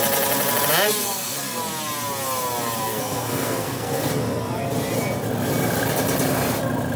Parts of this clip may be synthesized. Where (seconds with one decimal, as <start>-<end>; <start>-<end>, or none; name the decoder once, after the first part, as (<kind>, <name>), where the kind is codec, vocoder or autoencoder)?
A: 1.0-1.6 (codec, SNAC); 2.9-4.1